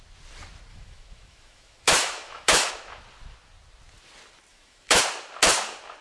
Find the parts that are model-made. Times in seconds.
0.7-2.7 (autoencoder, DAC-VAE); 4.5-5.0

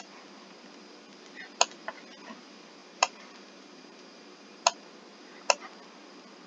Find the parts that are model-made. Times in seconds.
2.8-4.6 (vocoder, BigVGAN v2)